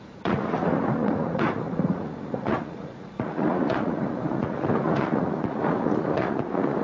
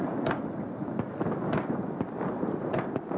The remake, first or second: first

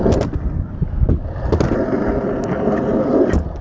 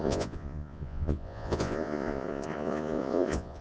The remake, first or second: second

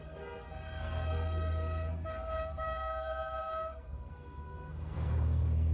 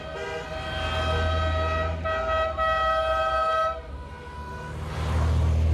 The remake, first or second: first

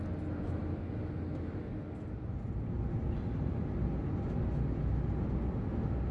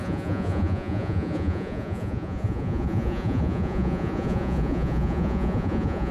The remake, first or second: second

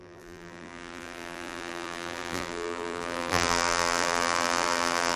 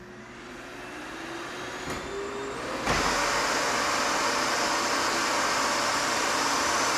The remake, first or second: first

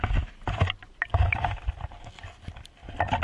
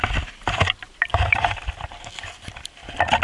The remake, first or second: second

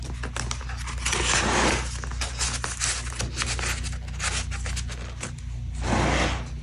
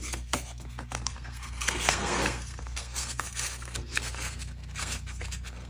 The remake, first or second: second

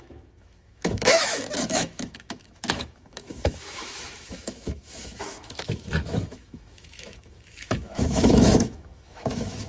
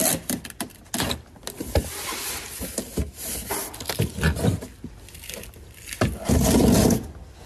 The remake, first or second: first